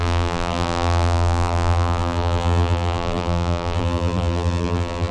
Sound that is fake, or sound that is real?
fake